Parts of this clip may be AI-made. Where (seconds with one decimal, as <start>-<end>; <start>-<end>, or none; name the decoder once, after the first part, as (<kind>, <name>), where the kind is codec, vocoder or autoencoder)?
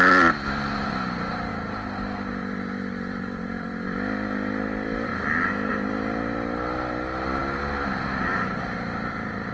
0.0-1.5 (vocoder, BigVGAN v2); 2.3-5.1; 5.7-9.5